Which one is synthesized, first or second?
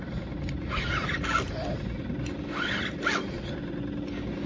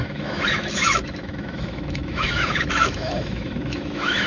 second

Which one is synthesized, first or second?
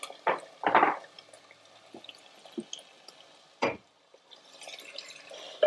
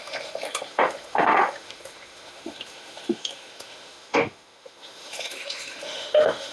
second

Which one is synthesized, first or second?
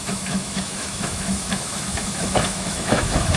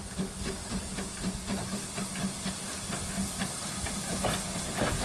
first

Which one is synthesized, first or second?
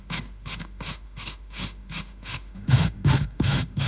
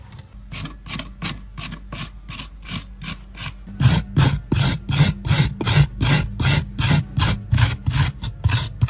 first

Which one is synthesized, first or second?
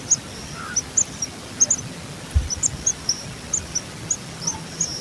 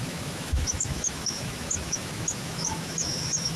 second